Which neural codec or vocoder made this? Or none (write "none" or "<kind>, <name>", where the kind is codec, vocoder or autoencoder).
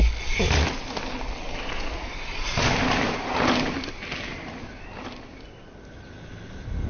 none